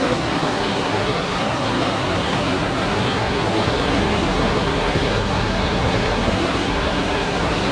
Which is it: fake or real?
fake